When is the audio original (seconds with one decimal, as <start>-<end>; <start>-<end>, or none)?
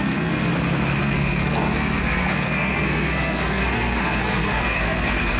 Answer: 0.5-1.0